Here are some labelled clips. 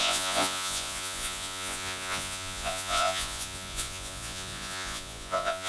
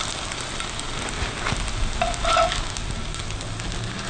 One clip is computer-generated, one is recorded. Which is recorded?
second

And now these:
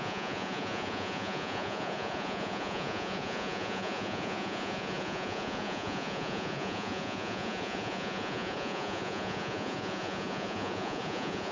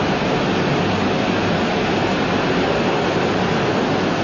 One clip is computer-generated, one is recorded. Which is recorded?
second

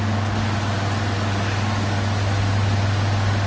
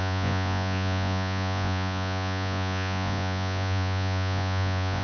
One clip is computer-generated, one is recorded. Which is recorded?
first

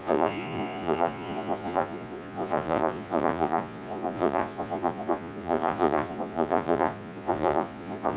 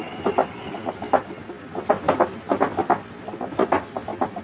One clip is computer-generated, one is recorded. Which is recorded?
second